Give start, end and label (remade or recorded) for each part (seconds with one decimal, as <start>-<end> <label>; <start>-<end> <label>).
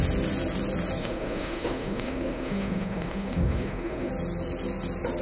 0.0-1.0 recorded; 1.0-4.1 remade; 4.1-5.2 recorded